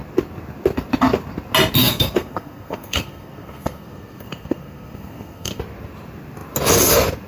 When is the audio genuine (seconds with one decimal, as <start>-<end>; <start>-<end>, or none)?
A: 0.0-1.8; 5.6-7.3